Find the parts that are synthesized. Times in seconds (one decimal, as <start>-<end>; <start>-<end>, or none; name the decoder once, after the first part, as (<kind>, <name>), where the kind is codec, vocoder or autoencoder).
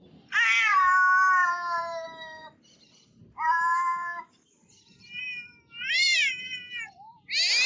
0.7-2.6 (vocoder, BigVGAN v2); 3.1-6.9